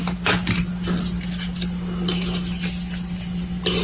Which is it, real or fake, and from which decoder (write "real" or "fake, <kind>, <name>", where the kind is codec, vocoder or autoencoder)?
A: real